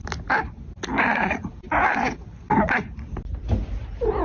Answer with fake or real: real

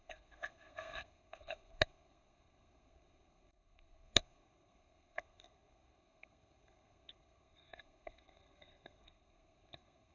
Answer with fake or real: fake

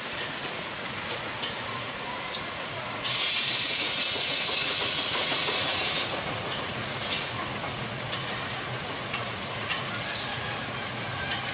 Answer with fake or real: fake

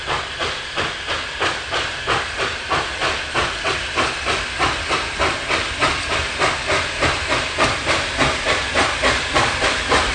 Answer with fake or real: real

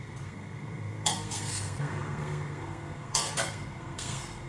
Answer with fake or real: fake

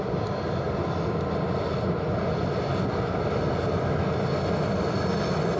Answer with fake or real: real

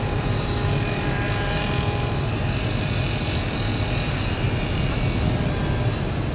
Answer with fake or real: real